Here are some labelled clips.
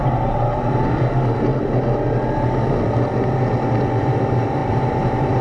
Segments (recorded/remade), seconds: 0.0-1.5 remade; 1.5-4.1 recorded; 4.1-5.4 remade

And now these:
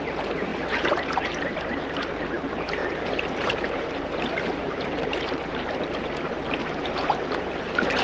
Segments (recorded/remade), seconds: 0.0-0.5 recorded; 0.5-1.4 remade; 1.4-2.8 recorded; 2.8-5.7 remade; 5.7-6.6 recorded; 6.6-8.0 remade

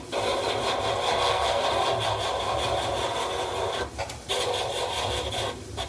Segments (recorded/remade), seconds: 0.0-1.1 recorded; 1.1-1.6 remade; 1.6-5.9 recorded

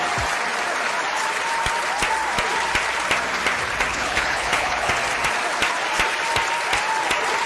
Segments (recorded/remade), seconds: 0.0-3.9 recorded; 3.9-4.9 remade; 4.9-7.5 recorded

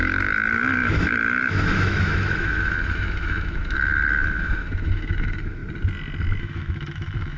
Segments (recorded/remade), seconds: 0.0-5.6 remade; 5.6-6.4 recorded; 6.4-7.4 remade

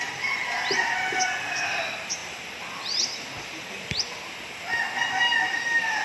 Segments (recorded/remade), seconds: 0.0-6.0 recorded

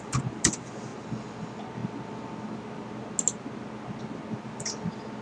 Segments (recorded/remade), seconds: 0.0-5.2 recorded